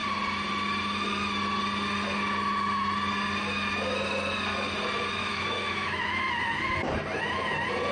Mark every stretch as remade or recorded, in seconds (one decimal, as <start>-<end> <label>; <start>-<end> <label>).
0.0-5.2 recorded; 5.2-6.2 remade; 6.2-7.9 recorded